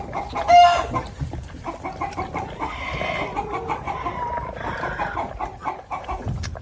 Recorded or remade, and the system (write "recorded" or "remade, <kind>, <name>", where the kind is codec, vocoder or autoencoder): recorded